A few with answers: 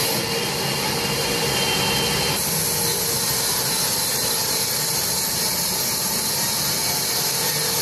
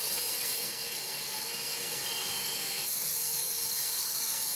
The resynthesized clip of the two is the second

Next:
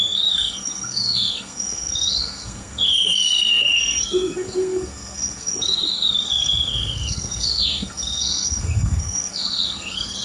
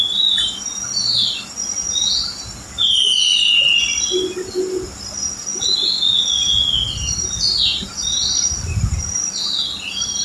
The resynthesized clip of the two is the first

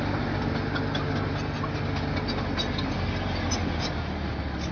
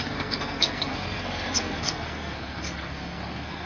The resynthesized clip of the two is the second